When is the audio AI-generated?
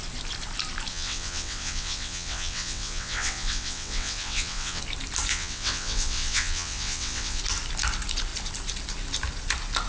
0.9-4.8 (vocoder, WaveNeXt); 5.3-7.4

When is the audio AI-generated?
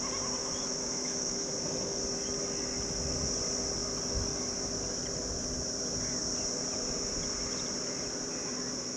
0.4-1.5 (autoencoder, DAC-VAE)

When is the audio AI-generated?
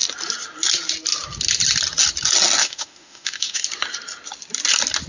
2.6-3.6 (autoencoder, DAC-VAE)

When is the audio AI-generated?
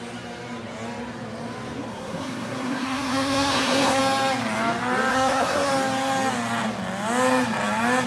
1.9-4.0 (codec, SNAC); 5.1-5.7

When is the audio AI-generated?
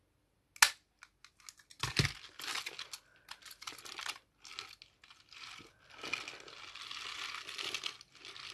none